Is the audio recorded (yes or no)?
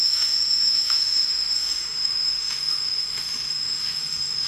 no